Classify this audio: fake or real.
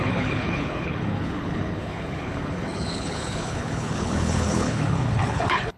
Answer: fake